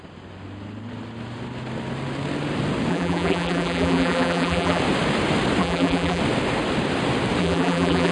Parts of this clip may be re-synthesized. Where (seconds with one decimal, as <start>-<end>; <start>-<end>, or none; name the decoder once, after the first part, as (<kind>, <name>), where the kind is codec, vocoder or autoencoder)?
2.9-4.8 (vocoder, BigVGAN v2); 5.6-6.2; 7.4-8.1